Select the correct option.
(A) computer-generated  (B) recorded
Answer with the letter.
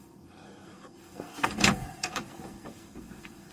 A